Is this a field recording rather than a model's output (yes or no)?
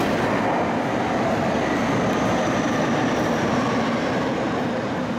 yes